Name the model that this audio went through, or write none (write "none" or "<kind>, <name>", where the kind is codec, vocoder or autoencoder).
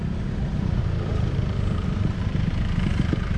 vocoder, BigVGAN v2